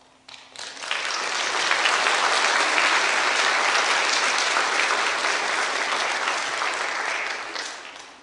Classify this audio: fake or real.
real